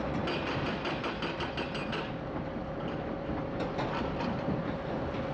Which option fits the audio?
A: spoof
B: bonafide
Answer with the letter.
B